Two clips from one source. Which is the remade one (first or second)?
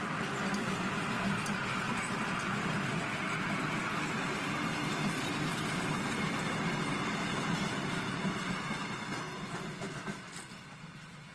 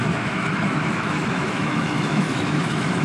second